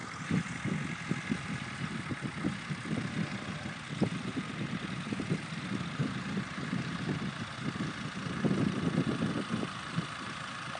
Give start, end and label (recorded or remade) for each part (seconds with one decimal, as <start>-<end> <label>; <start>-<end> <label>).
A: 0.0-6.0 recorded; 6.0-7.1 remade; 7.1-10.8 recorded